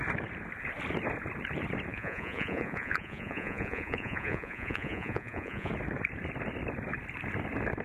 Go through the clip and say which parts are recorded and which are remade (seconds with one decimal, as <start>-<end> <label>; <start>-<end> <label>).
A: 0.0-1.9 recorded; 1.9-5.7 remade; 5.7-7.8 recorded